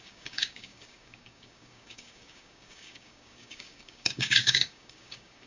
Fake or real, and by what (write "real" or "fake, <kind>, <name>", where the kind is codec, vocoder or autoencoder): fake, codec, DAC